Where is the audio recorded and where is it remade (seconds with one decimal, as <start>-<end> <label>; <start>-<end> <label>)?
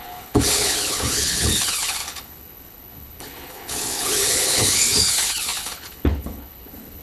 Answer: 0.0-7.0 remade